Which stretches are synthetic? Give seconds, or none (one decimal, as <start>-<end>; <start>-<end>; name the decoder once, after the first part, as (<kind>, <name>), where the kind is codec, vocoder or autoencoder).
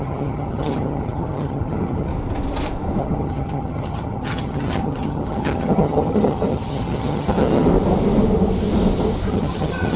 0.0-2.1 (vocoder, HiFi-GAN); 3.0-7.7; 9.3-10.0